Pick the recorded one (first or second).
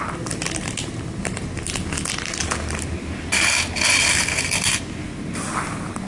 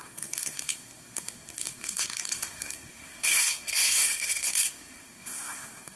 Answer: first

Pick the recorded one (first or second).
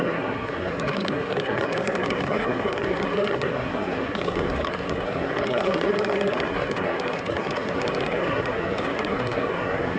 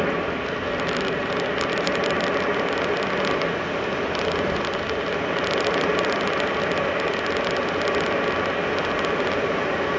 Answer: second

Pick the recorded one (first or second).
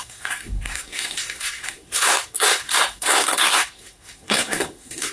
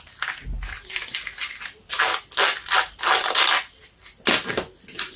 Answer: second